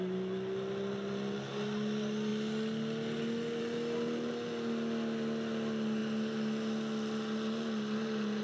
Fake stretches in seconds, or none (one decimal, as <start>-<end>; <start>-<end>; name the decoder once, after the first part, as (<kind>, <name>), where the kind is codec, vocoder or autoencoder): none